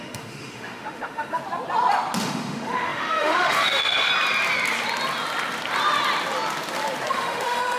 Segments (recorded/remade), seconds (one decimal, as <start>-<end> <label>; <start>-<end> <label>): 0.0-1.4 remade; 1.4-2.2 recorded; 2.2-4.1 remade; 4.1-7.1 recorded; 7.1-7.8 remade